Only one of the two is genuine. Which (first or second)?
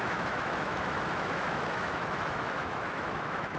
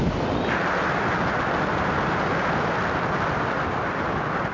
second